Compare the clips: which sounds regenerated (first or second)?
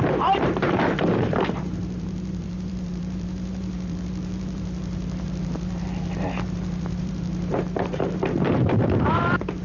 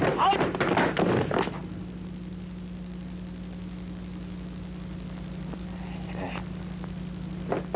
first